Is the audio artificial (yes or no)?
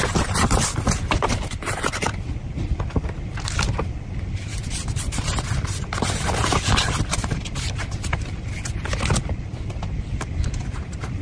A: no